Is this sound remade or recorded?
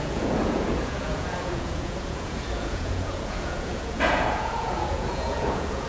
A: remade